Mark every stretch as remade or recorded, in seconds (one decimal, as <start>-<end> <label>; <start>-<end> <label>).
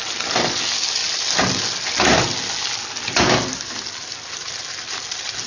0.0-5.5 recorded